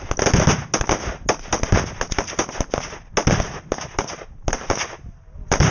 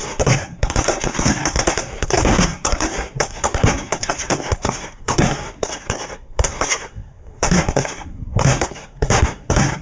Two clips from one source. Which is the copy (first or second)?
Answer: second